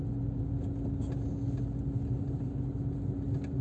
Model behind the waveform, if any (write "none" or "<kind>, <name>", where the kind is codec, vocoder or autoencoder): none